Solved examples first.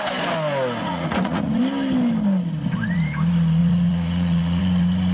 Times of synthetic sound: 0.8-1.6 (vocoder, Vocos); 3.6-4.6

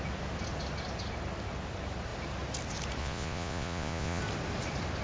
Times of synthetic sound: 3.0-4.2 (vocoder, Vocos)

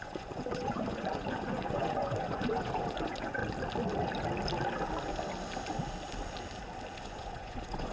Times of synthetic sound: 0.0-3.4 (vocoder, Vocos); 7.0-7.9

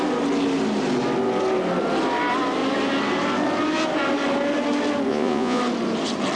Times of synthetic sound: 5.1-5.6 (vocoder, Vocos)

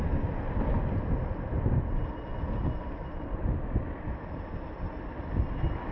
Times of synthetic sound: none

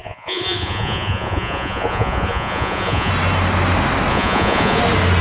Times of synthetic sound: 0.0-3.1 (vocoder, Vocos); 4.1-4.8